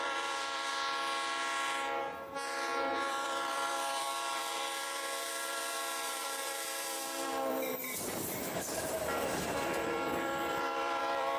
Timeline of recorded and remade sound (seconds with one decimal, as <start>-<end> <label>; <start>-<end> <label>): 0.0-0.7 remade; 0.7-3.1 recorded; 3.1-11.4 remade